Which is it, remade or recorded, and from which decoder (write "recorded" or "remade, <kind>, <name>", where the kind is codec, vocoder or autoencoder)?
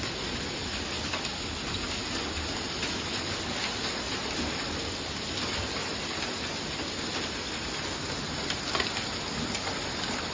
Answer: recorded